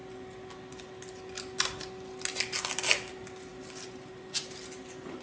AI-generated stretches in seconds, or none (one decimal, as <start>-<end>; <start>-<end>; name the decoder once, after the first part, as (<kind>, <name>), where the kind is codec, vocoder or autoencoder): none